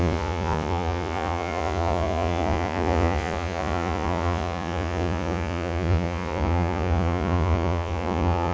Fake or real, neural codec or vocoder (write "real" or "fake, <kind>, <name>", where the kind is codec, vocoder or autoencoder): fake, vocoder, Vocos